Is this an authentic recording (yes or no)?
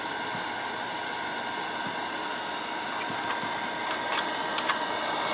yes